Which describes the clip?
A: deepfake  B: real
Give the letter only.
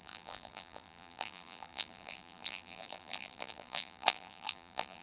A